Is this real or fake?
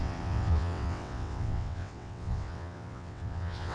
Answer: fake